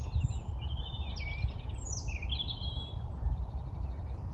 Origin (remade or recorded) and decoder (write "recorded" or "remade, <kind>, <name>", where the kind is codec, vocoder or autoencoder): recorded